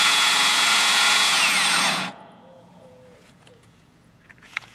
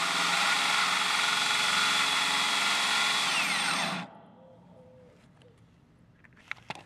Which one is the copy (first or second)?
first